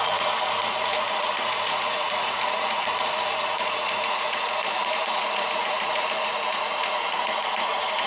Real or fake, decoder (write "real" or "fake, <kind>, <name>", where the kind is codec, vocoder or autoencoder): fake, vocoder, Vocos